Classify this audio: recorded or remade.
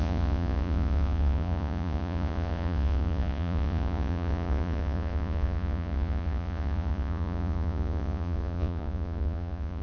remade